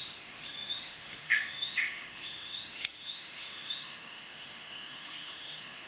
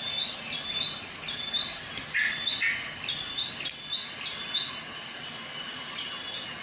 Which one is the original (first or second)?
second